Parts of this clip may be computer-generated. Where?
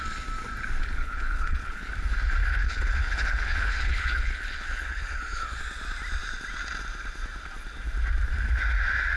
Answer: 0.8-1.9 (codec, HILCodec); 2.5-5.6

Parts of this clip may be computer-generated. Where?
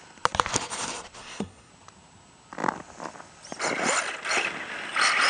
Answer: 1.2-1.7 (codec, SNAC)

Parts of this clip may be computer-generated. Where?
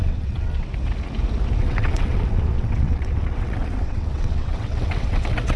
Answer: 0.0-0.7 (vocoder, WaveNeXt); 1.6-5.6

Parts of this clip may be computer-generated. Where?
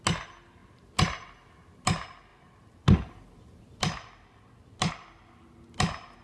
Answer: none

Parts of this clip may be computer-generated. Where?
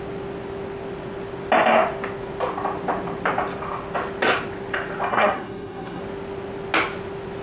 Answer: 5.1-6.0 (codec, SNAC)